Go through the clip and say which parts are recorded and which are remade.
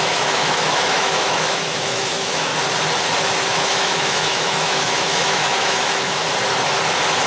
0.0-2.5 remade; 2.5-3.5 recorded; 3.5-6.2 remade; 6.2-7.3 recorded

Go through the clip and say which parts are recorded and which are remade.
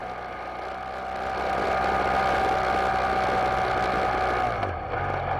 0.0-5.4 recorded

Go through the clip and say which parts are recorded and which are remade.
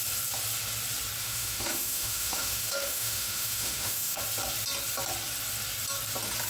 0.0-1.2 recorded; 1.2-4.2 remade; 4.2-6.5 recorded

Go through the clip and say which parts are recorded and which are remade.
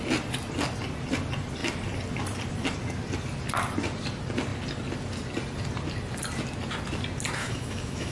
0.0-7.4 recorded; 7.4-8.1 remade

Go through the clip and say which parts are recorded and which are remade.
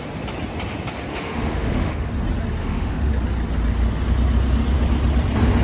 0.0-1.1 recorded; 1.1-2.1 remade; 2.1-2.6 recorded; 2.6-3.1 remade; 3.1-5.6 recorded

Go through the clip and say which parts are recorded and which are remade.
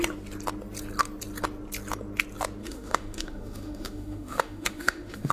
0.0-2.6 recorded; 2.6-5.3 remade